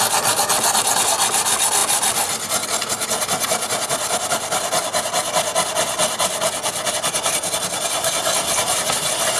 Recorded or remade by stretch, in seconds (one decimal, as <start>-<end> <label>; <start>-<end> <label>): 0.0-9.4 recorded